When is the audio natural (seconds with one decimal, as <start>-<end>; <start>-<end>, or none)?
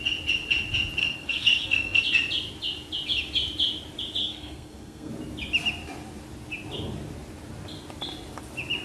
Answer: 0.0-1.0; 2.0-4.2; 5.1-8.8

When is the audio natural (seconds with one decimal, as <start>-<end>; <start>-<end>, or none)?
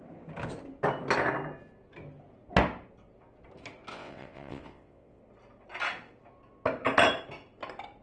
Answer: 0.0-3.9; 5.2-8.0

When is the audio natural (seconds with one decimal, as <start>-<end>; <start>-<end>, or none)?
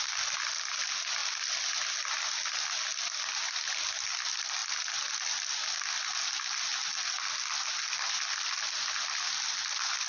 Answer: 0.0-10.1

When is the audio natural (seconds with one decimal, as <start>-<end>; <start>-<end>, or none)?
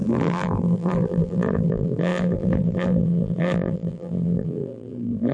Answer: none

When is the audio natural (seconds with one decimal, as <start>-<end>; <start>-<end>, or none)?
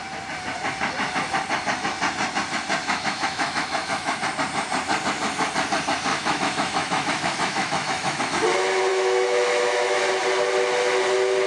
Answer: 0.0-2.8; 4.2-6.1; 8.2-8.9; 10.0-11.5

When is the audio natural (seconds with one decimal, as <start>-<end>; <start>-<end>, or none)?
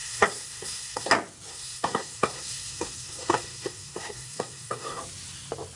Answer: 1.1-1.5; 5.0-5.8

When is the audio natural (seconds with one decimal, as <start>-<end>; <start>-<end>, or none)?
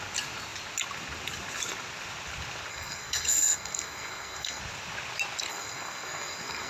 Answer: 0.0-2.7; 4.6-5.5